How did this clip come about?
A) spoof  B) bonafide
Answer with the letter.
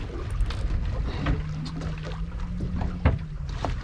B